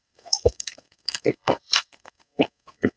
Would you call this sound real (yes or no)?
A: no